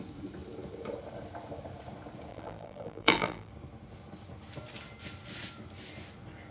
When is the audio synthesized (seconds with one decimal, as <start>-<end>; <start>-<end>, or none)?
2.3-3.5

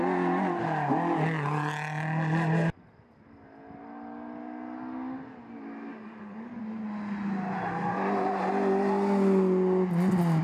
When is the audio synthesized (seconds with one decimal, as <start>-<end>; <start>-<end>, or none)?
5.9-6.6

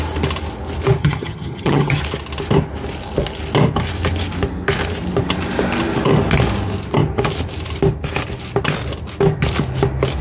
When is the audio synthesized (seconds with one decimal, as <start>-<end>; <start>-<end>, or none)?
1.0-2.0

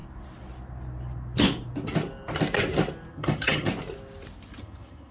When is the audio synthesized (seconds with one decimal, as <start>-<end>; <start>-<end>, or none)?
3.1-3.7; 4.6-5.1

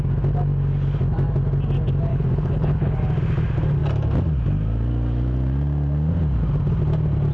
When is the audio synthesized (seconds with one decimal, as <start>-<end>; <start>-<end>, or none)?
2.1-3.0

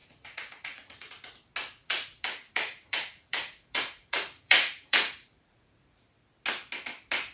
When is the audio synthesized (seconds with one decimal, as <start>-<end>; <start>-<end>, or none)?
0.0-1.1; 1.8-6.0

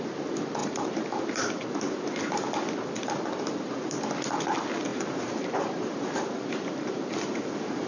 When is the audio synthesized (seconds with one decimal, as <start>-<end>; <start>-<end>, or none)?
0.6-2.2; 4.9-7.9